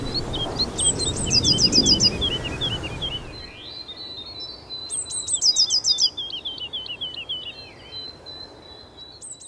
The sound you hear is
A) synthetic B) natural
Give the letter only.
B